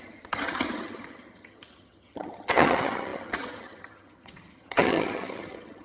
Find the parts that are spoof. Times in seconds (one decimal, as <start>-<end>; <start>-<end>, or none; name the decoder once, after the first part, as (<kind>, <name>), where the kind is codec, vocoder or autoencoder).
0.0-5.8 (vocoder, HiFi-GAN)